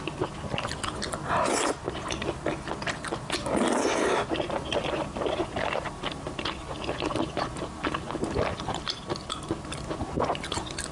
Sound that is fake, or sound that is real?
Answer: real